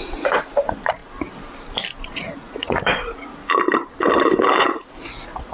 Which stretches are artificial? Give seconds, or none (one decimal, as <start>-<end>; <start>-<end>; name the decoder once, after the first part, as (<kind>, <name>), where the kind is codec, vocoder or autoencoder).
0.0-1.0 (vocoder, Vocos); 2.0-3.4; 4.6-5.5